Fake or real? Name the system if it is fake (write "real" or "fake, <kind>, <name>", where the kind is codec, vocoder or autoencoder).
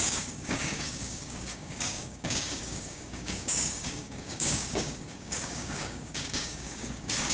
fake, codec, DAC